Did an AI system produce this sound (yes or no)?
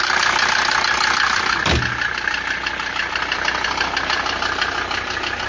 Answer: no